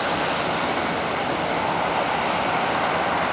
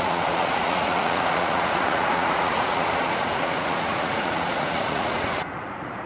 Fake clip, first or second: second